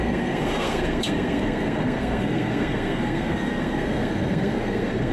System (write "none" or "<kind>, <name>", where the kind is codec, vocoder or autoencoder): codec, SNAC